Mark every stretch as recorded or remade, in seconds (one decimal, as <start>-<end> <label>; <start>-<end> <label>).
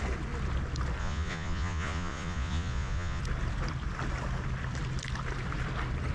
0.0-1.0 recorded; 1.0-3.2 remade; 3.2-6.1 recorded